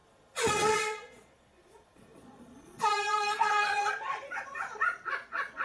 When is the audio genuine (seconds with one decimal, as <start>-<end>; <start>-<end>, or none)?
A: none